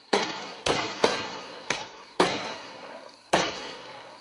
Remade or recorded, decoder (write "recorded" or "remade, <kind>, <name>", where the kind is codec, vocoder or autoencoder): remade, codec, SNAC